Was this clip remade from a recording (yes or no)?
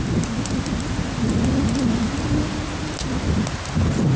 no